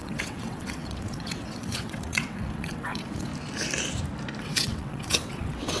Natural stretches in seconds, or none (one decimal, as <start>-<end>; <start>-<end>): 3.3-4.4